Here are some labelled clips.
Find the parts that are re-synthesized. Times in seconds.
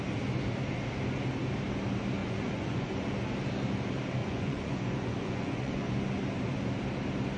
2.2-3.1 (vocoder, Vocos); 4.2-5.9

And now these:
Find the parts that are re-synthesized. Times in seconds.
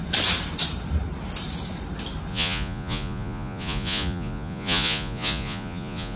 2.3-6.2 (vocoder, Vocos)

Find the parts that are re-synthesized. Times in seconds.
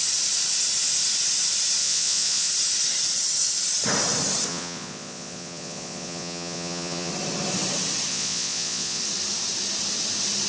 1.8-2.5 (vocoder, Vocos); 4.5-7.1; 8.1-9.0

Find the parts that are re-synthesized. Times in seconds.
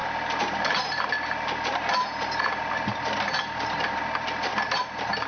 none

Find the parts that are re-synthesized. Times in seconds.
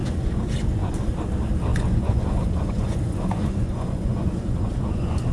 0.0-0.9 (vocoder, Vocos); 1.7-5.3